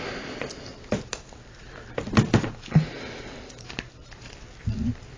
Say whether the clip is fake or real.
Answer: real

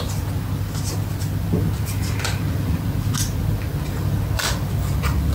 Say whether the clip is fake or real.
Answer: real